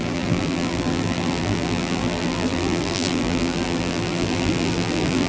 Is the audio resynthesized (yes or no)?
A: yes